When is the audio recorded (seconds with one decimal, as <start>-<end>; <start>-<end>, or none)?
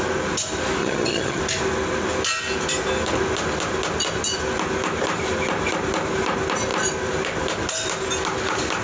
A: 0.0-0.8; 1.4-8.8